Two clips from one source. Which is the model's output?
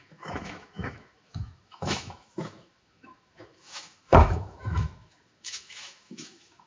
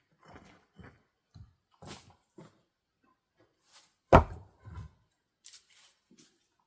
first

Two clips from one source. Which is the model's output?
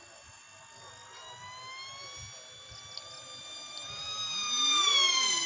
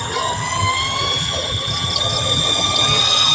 second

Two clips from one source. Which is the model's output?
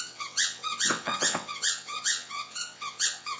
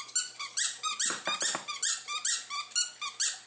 first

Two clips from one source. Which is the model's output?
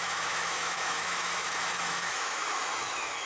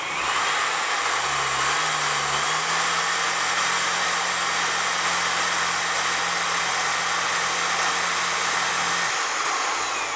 first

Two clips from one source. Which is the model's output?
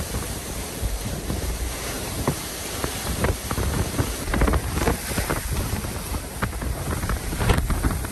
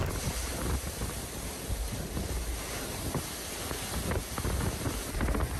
first